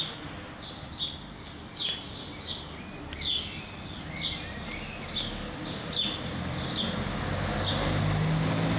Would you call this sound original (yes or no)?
yes